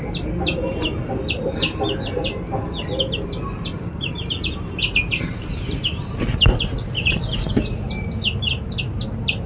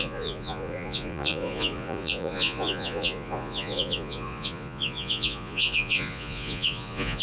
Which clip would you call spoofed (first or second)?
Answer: second